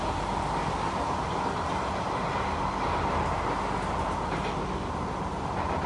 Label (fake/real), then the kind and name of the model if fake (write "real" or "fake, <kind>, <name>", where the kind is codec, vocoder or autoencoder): real